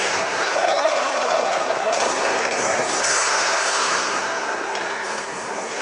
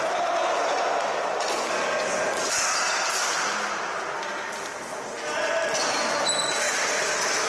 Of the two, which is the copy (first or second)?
first